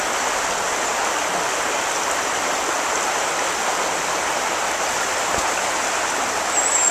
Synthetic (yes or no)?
no